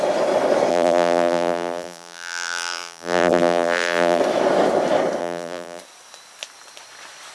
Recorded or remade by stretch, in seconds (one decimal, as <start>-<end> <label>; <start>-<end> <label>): 0.0-0.7 recorded; 0.7-4.2 remade; 4.2-5.2 recorded; 5.2-5.8 remade; 5.8-7.3 recorded